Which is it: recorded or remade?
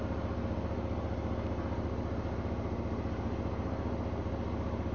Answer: recorded